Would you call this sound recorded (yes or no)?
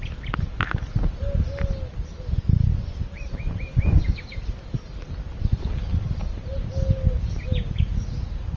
yes